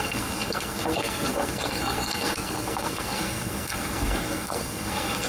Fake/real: fake